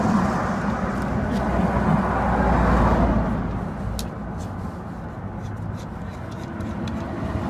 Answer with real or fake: real